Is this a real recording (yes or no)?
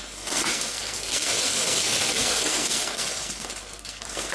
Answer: no